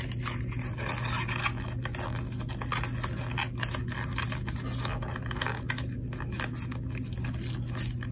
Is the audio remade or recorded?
recorded